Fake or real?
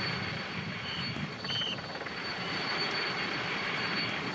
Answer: real